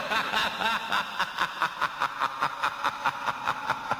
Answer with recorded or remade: recorded